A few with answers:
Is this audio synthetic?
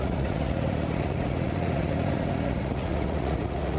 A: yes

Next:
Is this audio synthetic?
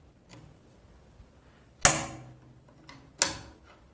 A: no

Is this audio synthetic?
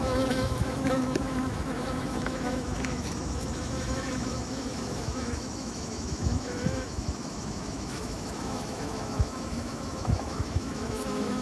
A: yes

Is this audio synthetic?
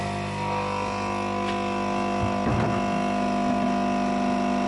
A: no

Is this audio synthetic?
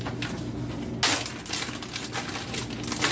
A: no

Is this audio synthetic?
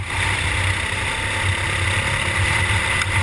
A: no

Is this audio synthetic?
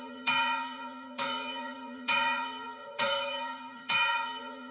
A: yes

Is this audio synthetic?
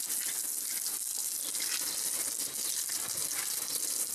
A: no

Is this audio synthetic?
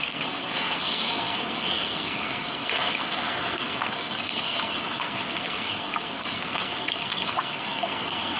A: yes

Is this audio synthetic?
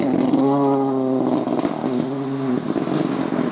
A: no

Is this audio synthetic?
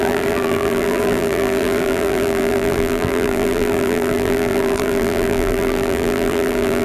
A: yes